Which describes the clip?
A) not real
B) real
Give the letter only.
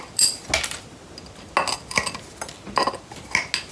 B